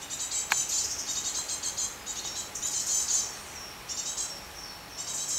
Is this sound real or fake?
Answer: real